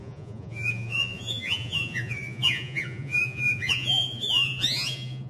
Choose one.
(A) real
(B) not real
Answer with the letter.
B